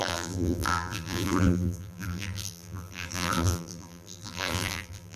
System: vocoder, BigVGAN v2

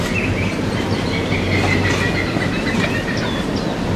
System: none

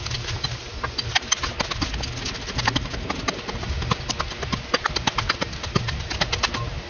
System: none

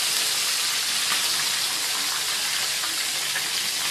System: none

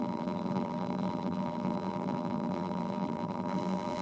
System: vocoder, BigVGAN v2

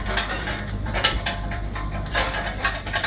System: vocoder, BigVGAN v2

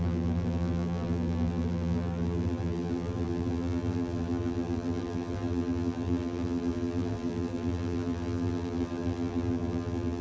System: vocoder, BigVGAN v2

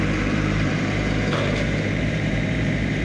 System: vocoder, BigVGAN v2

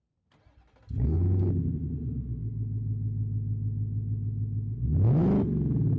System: none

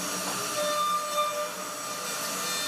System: none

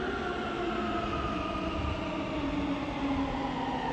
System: none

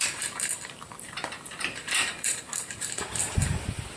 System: vocoder, BigVGAN v2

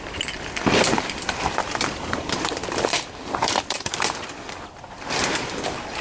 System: vocoder, BigVGAN v2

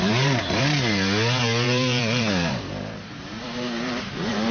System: vocoder, BigVGAN v2